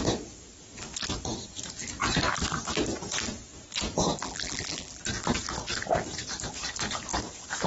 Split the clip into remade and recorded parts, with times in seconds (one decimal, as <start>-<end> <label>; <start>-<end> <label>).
0.0-4.2 recorded; 4.2-5.0 remade; 5.0-7.7 recorded